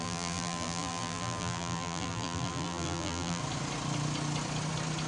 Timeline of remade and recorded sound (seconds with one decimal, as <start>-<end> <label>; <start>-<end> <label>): 0.0-3.4 remade; 3.4-5.1 recorded